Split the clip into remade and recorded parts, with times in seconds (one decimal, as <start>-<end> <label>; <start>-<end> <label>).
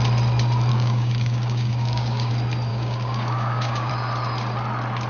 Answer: 0.0-0.7 recorded; 0.7-2.3 remade; 2.3-2.7 recorded; 2.7-3.9 remade; 3.9-5.1 recorded